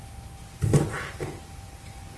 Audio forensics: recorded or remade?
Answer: recorded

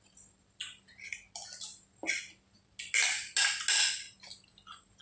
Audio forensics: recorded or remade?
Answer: recorded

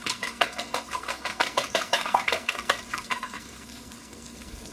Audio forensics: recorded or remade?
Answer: remade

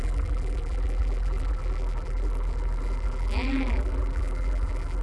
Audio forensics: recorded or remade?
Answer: remade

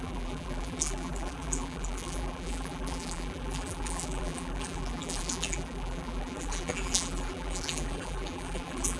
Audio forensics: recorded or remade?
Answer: remade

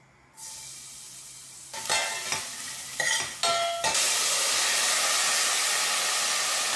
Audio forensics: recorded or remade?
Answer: recorded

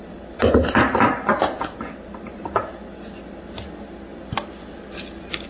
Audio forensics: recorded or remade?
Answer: recorded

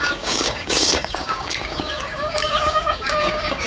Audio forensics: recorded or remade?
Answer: remade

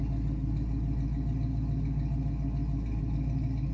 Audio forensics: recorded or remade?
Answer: recorded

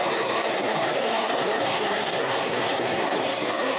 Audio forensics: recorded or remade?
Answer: remade